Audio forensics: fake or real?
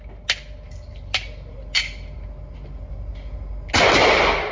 real